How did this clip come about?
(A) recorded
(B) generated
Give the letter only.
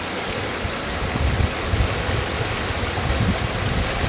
A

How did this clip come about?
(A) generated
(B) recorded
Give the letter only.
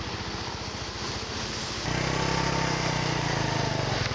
B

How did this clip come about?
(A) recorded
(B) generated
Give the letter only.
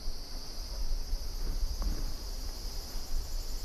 A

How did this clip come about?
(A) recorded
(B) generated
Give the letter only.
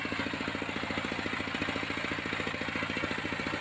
A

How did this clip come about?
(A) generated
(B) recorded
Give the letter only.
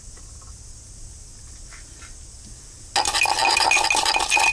B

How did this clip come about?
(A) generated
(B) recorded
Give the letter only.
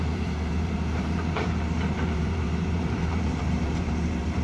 A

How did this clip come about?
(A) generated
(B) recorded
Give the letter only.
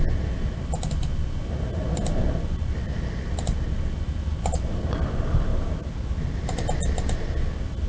B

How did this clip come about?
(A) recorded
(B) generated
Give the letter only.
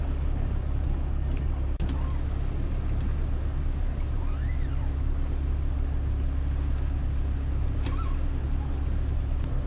A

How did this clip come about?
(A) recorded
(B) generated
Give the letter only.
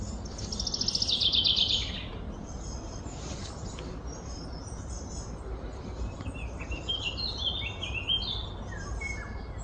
A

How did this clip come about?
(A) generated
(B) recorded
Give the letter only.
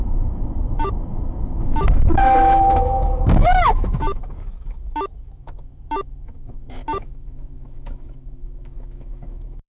A